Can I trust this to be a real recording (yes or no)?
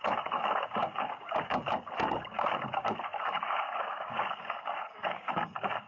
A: no